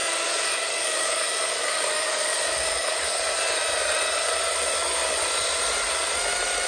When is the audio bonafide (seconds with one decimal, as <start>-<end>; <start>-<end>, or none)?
3.2-6.7